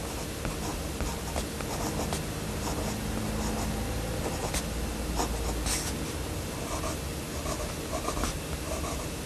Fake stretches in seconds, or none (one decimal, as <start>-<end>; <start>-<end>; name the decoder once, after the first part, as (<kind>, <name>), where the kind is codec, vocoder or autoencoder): none